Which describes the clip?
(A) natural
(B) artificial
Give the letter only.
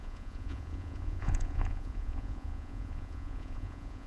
B